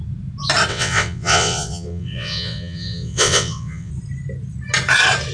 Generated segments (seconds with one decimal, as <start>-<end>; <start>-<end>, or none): 0.7-3.9

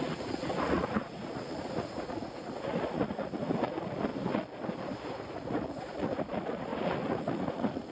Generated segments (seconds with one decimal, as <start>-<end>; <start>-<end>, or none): 0.0-4.1; 5.3-7.9

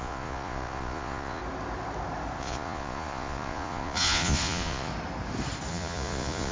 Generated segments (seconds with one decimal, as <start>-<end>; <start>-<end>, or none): 0.0-1.4; 2.4-4.9; 5.7-6.5

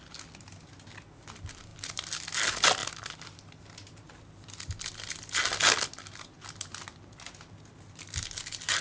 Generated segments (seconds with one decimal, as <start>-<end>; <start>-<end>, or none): none

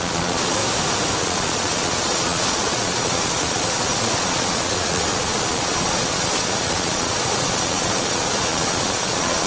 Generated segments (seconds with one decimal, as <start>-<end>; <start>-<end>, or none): 0.0-0.6; 1.2-9.5

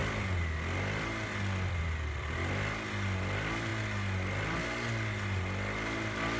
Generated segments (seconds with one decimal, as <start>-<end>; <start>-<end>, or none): none